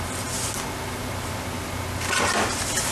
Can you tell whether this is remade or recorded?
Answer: recorded